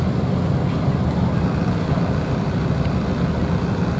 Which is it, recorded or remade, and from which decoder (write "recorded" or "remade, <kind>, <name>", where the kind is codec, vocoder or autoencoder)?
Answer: recorded